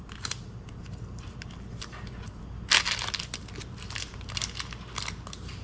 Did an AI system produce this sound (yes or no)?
no